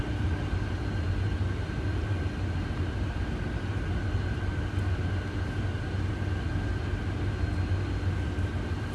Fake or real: real